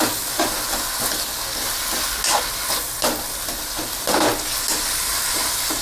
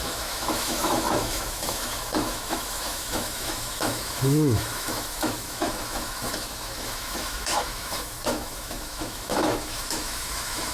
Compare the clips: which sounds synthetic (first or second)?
second